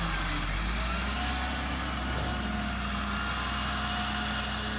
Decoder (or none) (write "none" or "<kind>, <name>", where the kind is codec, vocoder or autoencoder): none